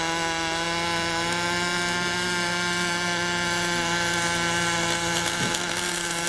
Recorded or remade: recorded